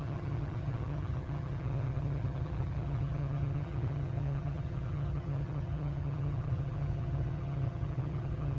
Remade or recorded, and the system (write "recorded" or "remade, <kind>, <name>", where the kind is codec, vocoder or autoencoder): remade, vocoder, HiFi-GAN